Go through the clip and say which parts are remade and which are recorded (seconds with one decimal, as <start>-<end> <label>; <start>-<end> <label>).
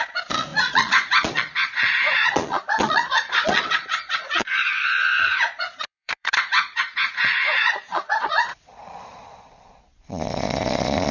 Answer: 0.0-11.1 remade